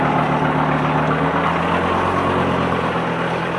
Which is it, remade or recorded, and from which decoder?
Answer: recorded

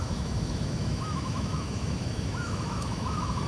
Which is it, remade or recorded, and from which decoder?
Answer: remade, autoencoder, DAC-VAE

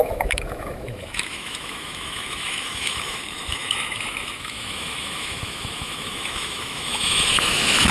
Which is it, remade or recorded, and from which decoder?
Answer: remade, autoencoder, DAC-VAE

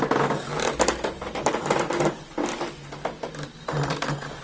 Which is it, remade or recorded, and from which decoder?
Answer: recorded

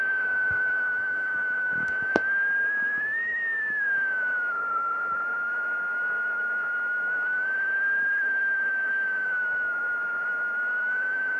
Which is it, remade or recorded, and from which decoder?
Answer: remade, autoencoder, DAC-VAE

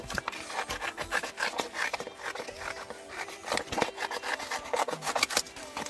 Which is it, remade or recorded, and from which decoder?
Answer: recorded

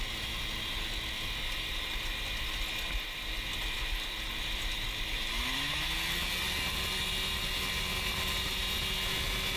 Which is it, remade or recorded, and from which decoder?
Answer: recorded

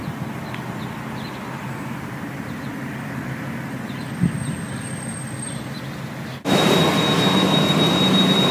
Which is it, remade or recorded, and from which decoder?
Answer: recorded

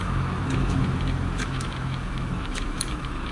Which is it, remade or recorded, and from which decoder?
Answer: remade, autoencoder, DAC-VAE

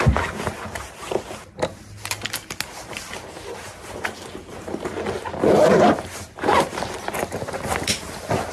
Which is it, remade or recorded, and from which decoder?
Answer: recorded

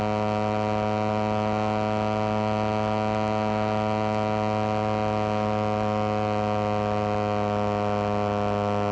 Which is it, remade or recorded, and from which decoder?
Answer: recorded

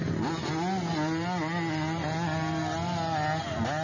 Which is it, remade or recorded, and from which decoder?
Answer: recorded